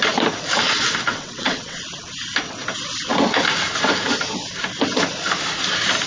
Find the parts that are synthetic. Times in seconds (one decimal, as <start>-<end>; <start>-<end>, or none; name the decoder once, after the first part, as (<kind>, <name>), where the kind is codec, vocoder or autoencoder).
1.1-1.8 (vocoder, WaveNeXt)